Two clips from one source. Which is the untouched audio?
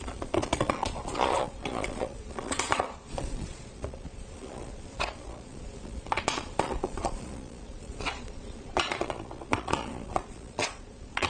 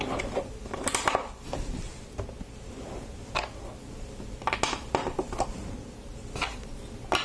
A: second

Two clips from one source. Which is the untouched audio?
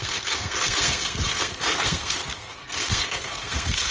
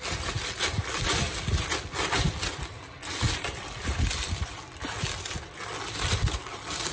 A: second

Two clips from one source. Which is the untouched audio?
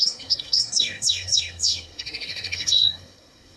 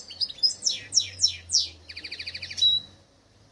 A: second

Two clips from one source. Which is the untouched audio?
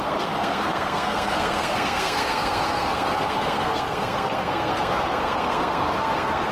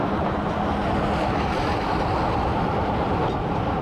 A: second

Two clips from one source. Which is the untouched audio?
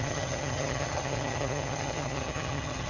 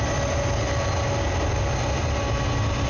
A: second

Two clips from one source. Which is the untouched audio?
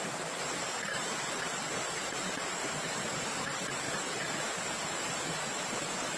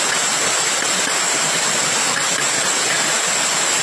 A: second